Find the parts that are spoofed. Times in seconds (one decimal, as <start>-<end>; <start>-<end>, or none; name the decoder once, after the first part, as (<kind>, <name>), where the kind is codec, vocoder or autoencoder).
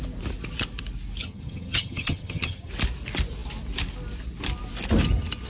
1.2-2.7 (vocoder, HiFi-GAN)